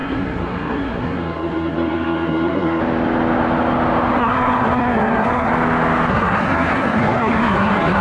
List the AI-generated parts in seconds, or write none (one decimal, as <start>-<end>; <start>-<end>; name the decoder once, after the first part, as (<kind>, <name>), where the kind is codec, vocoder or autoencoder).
0.0-2.8 (codec, SNAC); 4.2-5.5; 6.1-8.0